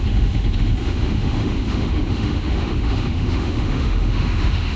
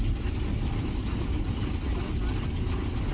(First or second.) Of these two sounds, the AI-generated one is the first